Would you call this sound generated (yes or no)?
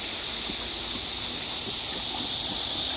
no